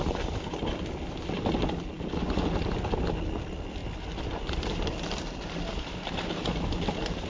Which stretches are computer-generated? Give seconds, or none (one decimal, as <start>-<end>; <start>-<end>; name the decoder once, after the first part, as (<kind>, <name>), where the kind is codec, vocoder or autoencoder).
none